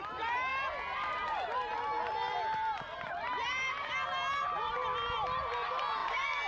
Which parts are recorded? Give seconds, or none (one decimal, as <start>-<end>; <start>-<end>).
0.0-6.5